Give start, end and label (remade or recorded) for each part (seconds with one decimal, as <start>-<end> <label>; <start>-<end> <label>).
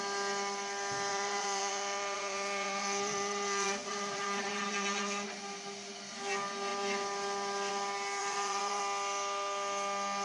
0.0-1.1 recorded; 1.1-5.4 remade; 5.4-8.2 recorded; 8.2-8.8 remade; 8.8-10.2 recorded